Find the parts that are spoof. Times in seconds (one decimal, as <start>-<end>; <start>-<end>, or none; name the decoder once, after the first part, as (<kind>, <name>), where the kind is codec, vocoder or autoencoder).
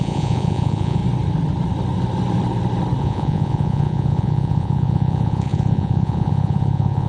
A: 0.0-1.0 (vocoder, Vocos); 3.0-7.1